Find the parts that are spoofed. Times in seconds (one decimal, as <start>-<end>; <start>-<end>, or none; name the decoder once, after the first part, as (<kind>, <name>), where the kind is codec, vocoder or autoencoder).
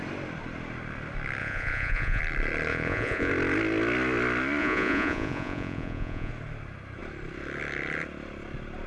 1.4-2.2 (vocoder, Vocos); 2.7-3.3; 4.6-6.3